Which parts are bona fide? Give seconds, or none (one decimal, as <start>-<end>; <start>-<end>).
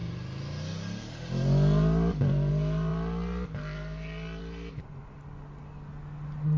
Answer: 0.0-6.6